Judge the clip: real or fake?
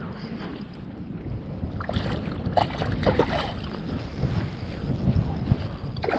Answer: real